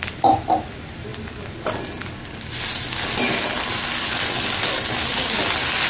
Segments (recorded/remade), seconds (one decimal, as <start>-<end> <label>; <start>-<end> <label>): 0.0-1.1 remade; 1.1-4.6 recorded; 4.6-5.9 remade